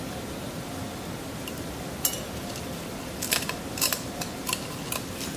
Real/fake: real